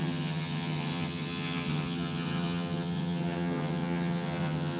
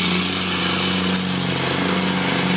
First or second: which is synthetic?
first